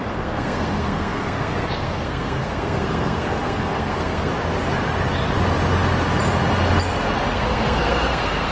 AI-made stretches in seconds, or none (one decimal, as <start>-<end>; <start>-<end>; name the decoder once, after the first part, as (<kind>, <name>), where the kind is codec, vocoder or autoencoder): 0.0-4.3 (codec, SNAC); 7.3-8.5